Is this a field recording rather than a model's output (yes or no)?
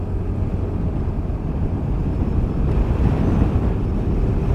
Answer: yes